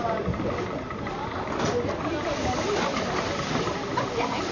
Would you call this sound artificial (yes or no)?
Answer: no